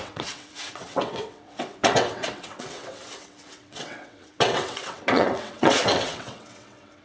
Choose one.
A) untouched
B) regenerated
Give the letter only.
B